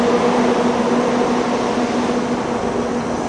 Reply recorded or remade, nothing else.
recorded